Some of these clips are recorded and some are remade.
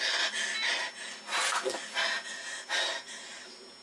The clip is recorded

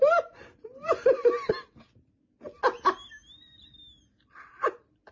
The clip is recorded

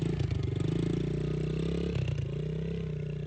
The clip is recorded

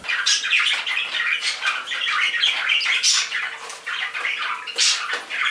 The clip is recorded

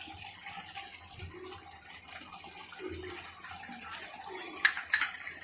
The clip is recorded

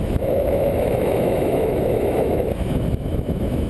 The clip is remade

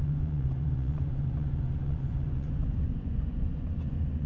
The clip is remade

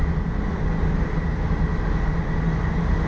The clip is recorded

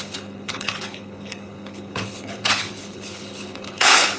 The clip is remade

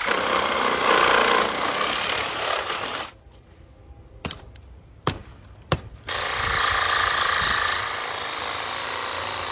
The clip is remade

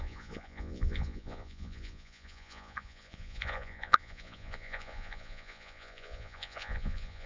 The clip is remade